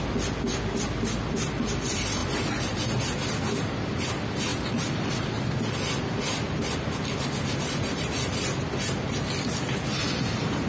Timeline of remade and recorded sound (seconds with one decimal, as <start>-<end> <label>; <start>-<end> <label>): 0.0-10.7 recorded